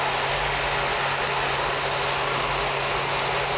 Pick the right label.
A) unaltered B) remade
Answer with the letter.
A